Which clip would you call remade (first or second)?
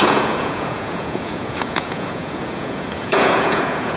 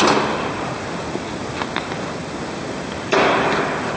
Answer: first